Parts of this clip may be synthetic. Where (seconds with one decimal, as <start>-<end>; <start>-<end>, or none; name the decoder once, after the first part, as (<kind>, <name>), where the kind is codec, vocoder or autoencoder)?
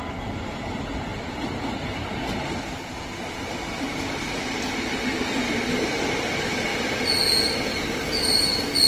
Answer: 1.1-6.0 (vocoder, BigVGAN v2)